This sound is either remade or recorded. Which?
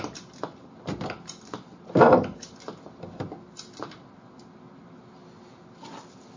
recorded